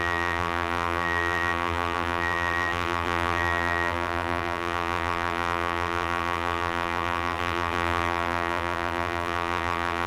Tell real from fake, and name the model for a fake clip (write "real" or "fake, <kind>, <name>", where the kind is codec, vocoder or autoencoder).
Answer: fake, vocoder, BigVGAN v2